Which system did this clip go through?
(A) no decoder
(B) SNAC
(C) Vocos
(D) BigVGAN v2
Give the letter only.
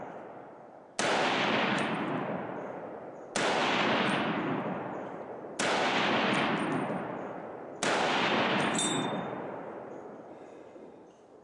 A